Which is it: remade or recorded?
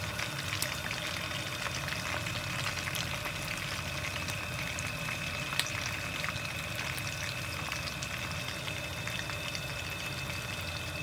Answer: recorded